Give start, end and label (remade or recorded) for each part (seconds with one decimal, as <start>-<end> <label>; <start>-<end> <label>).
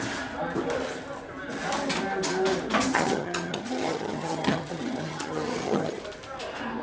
0.0-2.9 recorded; 2.9-6.0 remade; 6.0-6.8 recorded